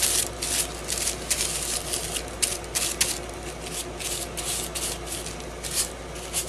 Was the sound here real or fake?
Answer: real